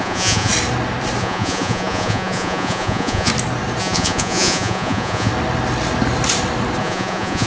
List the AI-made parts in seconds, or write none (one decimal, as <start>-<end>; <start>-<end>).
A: 0.0-0.5; 1.2-3.3; 3.8-5.3; 6.8-7.5